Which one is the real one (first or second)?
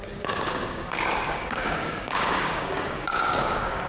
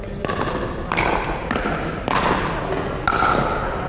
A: second